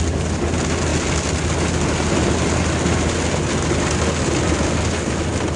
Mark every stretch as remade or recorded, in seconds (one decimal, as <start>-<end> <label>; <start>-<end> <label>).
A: 0.0-5.6 recorded